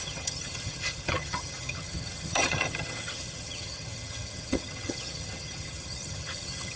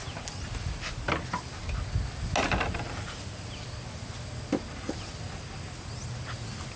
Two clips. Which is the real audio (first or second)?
second